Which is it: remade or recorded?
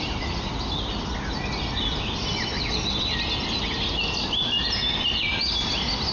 recorded